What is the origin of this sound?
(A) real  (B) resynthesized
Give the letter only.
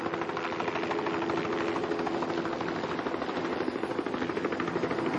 A